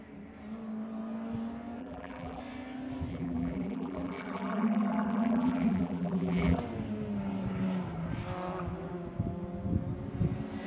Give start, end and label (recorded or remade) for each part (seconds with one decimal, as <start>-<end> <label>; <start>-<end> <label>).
0.0-1.8 recorded; 1.8-2.4 remade; 2.4-3.1 recorded; 3.1-6.6 remade; 6.6-10.7 recorded